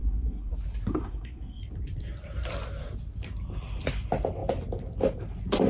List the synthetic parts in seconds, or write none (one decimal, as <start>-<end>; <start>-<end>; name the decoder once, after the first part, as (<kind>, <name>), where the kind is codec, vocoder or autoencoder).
0.0-0.5 (codec, SNAC); 0.9-1.6